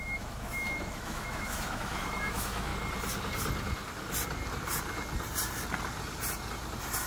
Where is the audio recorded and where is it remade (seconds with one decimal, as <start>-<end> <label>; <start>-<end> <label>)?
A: 0.0-2.7 remade; 2.7-7.1 recorded